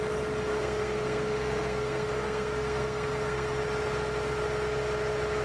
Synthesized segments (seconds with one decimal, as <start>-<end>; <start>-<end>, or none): 0.5-3.6